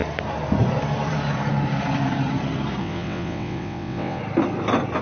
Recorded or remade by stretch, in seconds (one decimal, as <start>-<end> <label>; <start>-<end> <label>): 0.0-2.8 recorded; 2.8-4.2 remade; 4.2-5.0 recorded